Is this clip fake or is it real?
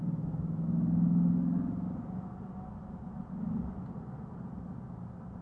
real